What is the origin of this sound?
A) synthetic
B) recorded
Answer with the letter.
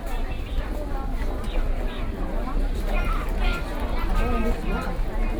B